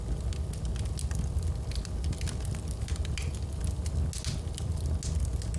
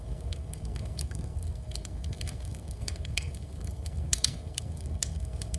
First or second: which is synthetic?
second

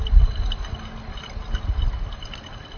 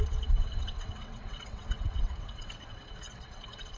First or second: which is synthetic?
second